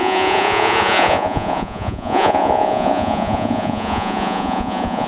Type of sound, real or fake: fake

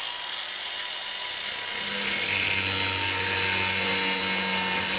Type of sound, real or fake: real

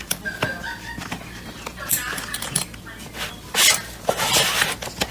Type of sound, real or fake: fake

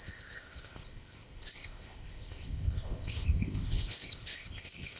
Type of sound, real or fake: fake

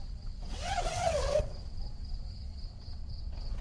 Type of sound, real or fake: fake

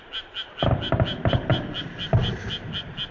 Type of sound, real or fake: real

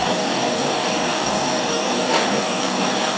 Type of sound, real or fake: fake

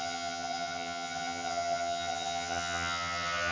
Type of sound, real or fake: fake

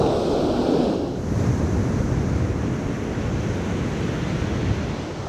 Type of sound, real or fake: real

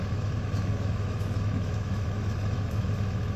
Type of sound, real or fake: fake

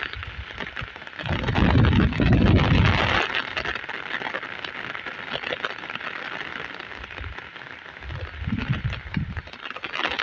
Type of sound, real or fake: real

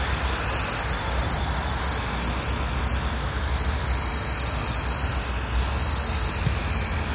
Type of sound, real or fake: real